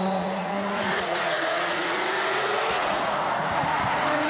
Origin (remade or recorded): remade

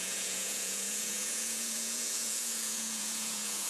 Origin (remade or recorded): remade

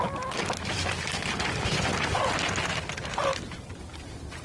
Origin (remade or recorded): recorded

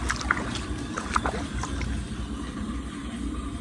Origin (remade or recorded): recorded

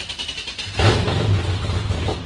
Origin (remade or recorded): recorded